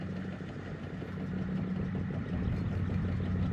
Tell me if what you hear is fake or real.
real